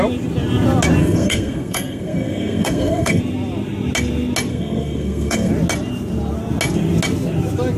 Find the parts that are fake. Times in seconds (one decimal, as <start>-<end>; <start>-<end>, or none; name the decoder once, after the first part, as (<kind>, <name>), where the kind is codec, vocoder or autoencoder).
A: 1.0-3.2 (codec, SNAC); 4.5-5.5